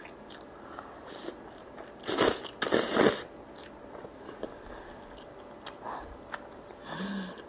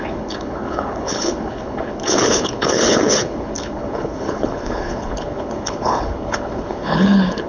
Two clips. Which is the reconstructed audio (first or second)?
second